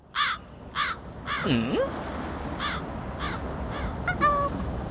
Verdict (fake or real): real